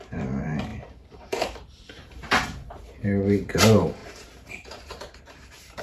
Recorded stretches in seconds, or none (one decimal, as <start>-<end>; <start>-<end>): none